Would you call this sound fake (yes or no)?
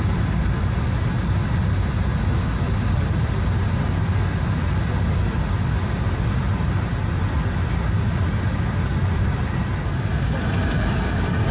no